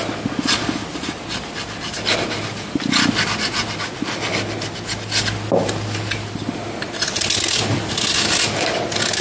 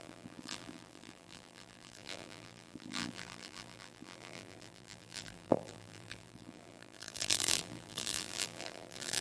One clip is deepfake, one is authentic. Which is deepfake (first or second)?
second